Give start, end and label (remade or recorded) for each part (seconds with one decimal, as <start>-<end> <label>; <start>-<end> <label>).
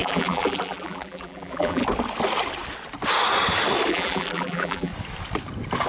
0.0-1.8 remade; 1.8-3.9 recorded; 3.9-4.9 remade; 4.9-5.9 recorded